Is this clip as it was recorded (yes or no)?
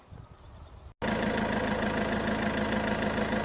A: yes